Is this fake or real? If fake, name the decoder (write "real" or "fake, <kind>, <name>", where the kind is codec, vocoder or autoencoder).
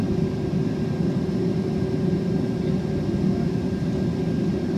real